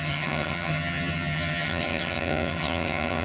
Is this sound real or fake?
fake